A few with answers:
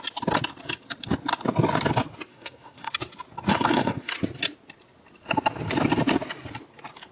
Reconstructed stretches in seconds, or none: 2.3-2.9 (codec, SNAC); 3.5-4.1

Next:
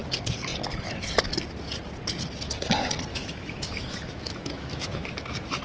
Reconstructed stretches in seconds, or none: 3.1-5.6 (autoencoder, DAC-VAE)

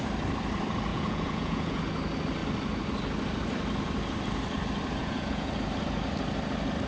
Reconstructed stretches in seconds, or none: 0.9-1.8 (vocoder, Vocos); 5.0-5.5

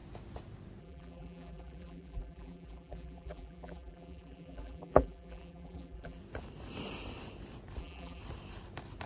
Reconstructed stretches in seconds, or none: 0.8-6.2 (vocoder, BigVGAN v2); 7.8-8.2

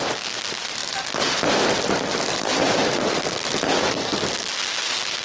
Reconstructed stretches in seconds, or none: none